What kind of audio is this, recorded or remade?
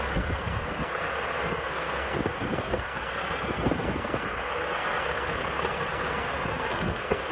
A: remade